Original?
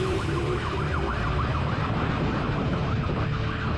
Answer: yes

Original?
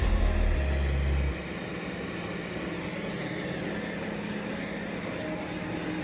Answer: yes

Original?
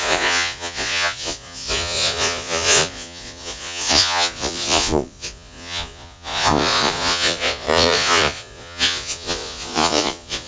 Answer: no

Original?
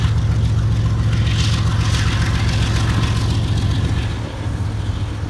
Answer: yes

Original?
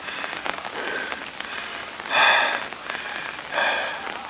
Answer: yes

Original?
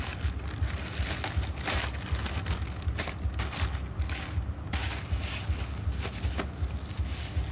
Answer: yes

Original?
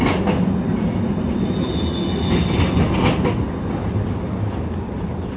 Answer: yes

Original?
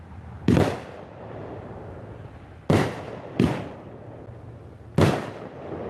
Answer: yes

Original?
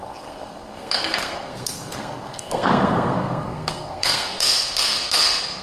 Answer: no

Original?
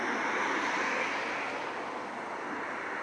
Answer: yes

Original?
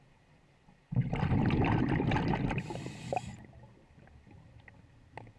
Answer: yes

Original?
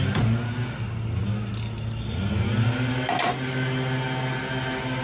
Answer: yes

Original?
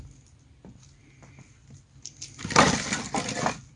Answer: yes